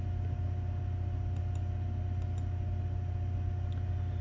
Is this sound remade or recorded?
recorded